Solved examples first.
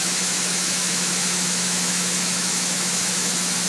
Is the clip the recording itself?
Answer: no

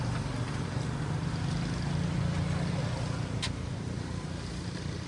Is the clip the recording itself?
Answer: yes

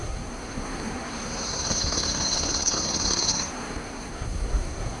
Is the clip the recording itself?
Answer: no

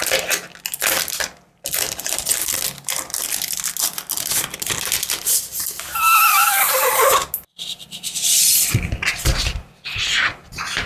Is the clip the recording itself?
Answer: yes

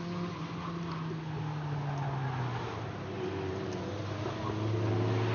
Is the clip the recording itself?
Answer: yes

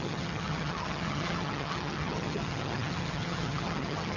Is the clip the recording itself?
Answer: no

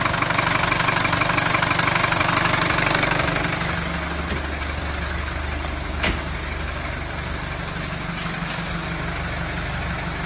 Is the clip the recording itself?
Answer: yes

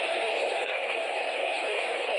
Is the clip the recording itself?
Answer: no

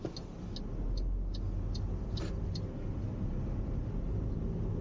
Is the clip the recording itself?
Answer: yes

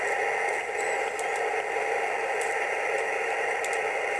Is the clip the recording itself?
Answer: yes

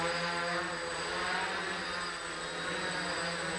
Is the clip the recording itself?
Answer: yes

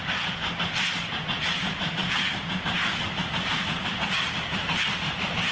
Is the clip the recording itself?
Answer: no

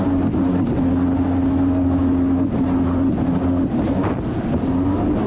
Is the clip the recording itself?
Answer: yes